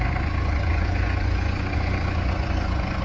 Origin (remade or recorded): remade